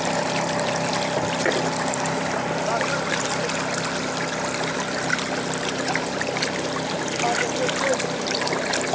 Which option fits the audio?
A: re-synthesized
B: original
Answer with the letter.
B